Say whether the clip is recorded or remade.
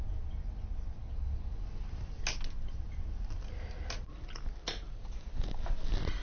recorded